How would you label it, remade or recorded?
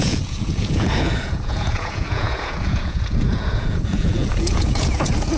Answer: remade